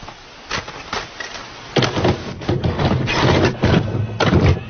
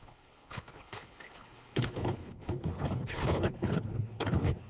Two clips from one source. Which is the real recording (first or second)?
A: first